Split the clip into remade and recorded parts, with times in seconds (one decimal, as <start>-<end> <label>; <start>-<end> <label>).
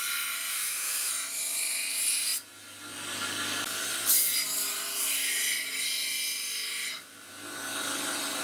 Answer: 0.0-0.5 recorded; 0.5-1.1 remade; 1.1-8.4 recorded